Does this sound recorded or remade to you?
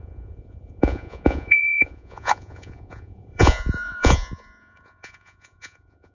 remade